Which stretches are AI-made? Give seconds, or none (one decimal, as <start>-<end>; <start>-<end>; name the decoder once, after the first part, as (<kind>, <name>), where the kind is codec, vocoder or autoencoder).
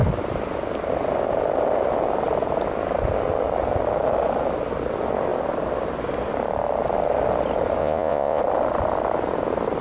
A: 7.8-8.4 (vocoder, Vocos)